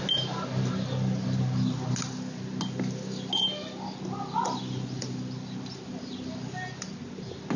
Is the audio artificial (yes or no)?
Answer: no